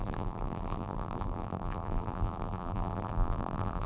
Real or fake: fake